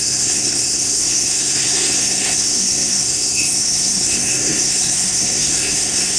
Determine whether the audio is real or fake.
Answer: fake